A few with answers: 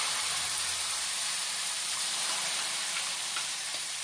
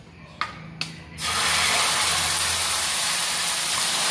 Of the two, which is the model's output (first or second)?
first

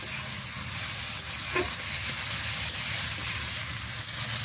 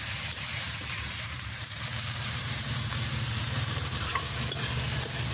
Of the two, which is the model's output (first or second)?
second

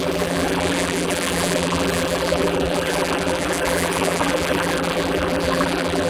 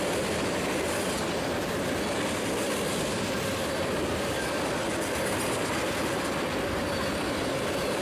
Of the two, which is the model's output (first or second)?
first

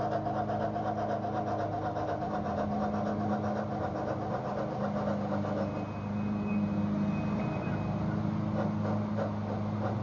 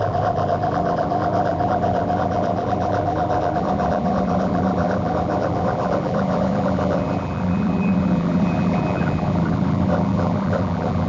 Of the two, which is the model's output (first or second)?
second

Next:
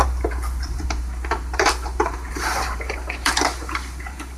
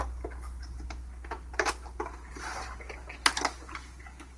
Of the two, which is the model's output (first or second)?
first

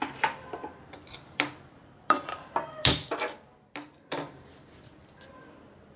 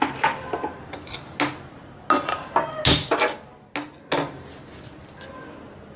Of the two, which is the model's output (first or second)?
first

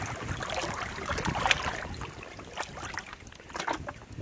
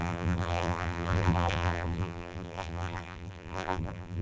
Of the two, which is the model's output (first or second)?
second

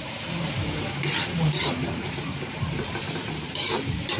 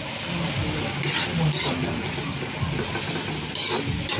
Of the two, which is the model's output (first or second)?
first